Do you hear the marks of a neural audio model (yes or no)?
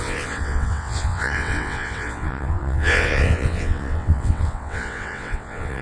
yes